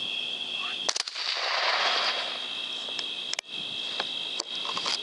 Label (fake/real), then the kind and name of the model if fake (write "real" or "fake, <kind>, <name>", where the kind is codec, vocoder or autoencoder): real